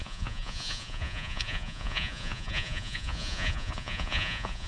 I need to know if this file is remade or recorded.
remade